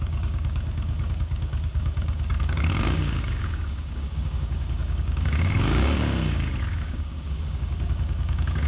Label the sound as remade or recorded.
remade